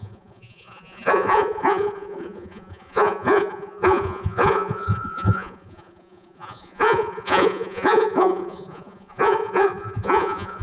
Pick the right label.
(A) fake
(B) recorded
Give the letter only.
A